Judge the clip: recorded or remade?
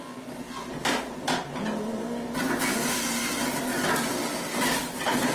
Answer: recorded